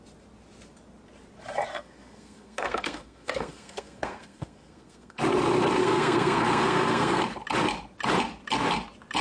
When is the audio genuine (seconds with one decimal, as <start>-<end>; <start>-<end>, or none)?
0.0-1.7; 5.2-5.8; 7.2-9.2